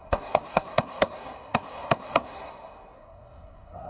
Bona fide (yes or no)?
no